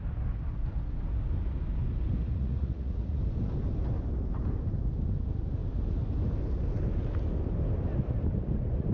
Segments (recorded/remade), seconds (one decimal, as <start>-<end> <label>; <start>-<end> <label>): 0.0-2.2 recorded; 2.2-3.2 remade; 3.2-8.9 recorded